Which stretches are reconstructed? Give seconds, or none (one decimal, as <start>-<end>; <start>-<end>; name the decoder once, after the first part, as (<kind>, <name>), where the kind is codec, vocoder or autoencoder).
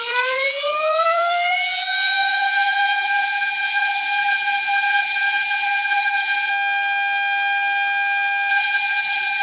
0.0-6.5 (vocoder, BigVGAN v2); 8.5-9.4